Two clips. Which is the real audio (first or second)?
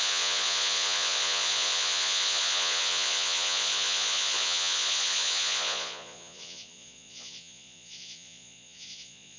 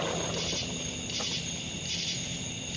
second